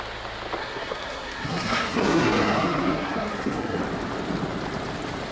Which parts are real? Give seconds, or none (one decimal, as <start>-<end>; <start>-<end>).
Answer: 0.0-0.6; 3.8-5.3